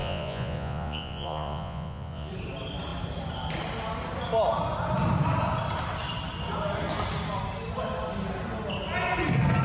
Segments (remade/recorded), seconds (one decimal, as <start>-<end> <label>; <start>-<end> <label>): 0.0-2.3 remade; 2.3-9.6 recorded